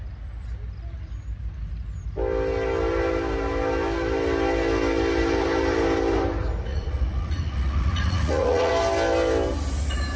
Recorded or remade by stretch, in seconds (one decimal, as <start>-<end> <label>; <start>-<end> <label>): 0.0-6.7 recorded; 6.7-8.7 remade; 8.7-10.2 recorded